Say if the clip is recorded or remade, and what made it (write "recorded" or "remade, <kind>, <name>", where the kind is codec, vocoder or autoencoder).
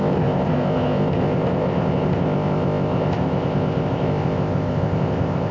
remade, codec, ZipCodec